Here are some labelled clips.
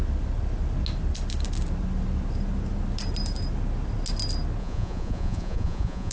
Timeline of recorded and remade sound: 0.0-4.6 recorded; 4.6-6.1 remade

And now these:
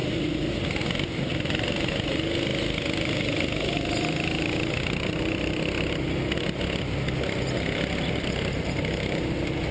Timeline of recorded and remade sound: 0.0-0.5 remade; 0.5-1.3 recorded; 1.3-1.9 remade; 1.9-9.7 recorded

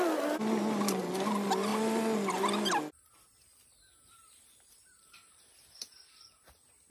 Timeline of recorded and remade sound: 0.0-6.9 recorded

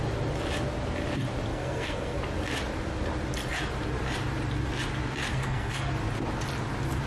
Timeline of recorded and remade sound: 0.0-1.5 recorded; 1.5-2.2 remade; 2.2-5.3 recorded; 5.3-5.9 remade; 5.9-7.1 recorded

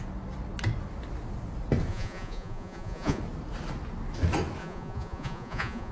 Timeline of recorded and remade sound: 0.0-1.9 recorded; 1.9-3.2 remade; 3.2-4.6 recorded; 4.6-5.9 remade

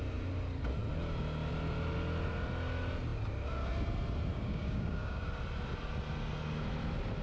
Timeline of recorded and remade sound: 0.0-4.3 recorded; 4.3-5.3 remade; 5.3-7.2 recorded

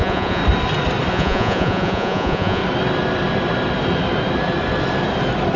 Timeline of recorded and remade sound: 0.0-0.4 remade; 0.4-1.1 recorded; 1.1-2.6 remade; 2.6-5.6 recorded